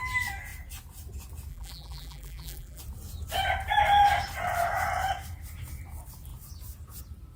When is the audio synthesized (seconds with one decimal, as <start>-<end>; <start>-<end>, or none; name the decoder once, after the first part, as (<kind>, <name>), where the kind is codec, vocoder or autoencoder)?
1.5-2.8 (vocoder, BigVGAN v2)